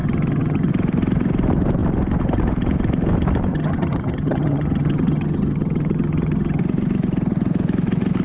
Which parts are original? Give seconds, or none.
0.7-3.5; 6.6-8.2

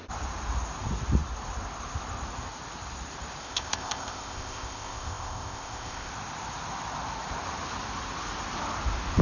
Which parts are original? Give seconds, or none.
0.0-3.4; 6.1-9.2

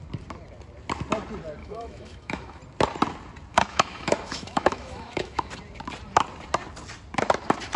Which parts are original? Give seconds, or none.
0.0-1.6; 2.6-3.5; 5.5-7.8